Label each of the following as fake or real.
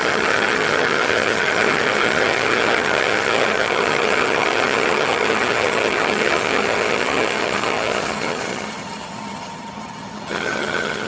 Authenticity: fake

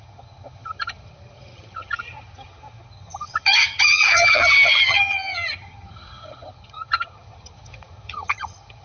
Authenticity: fake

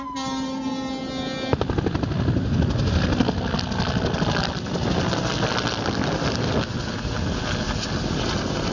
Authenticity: real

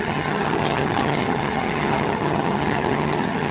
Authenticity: fake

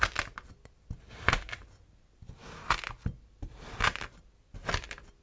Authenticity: real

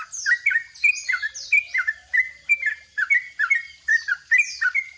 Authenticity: real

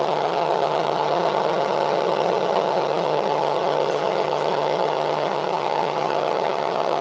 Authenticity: fake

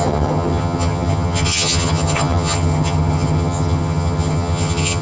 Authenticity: fake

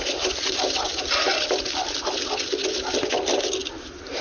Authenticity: real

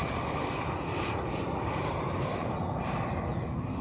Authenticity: real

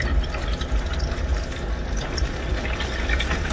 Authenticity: real